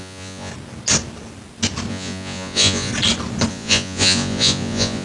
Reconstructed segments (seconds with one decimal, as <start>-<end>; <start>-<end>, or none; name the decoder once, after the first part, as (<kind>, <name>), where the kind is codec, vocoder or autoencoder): 0.0-0.5 (vocoder, Vocos); 1.9-2.9; 3.5-5.0